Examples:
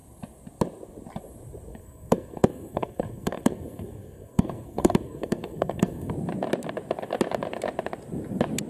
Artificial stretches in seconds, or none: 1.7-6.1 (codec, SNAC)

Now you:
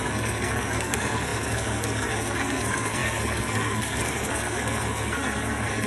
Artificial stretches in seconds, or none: 0.0-5.9 (codec, SNAC)

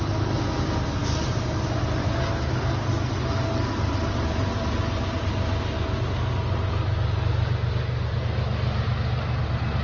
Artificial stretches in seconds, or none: none

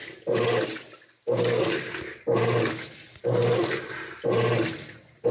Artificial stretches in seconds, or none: none